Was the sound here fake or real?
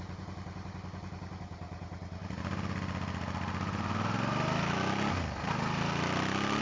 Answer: real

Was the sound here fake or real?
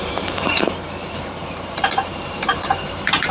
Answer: fake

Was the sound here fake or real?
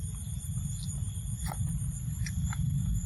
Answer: fake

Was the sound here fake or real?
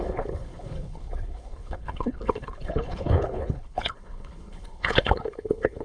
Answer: fake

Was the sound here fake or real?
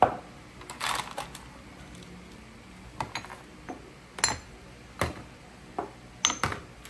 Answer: real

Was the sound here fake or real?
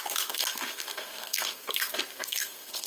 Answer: fake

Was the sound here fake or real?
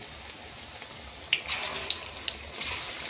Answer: real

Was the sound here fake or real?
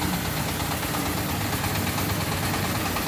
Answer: real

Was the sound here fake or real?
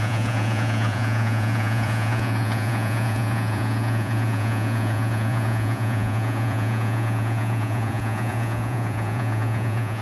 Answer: fake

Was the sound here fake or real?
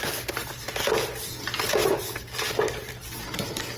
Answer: real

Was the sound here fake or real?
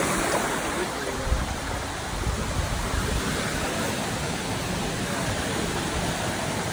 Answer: real